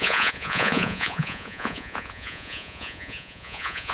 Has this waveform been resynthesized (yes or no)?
yes